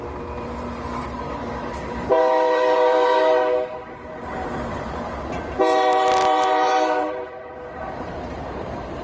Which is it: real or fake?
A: fake